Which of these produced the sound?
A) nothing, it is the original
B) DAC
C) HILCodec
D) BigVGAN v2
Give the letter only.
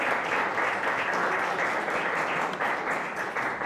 A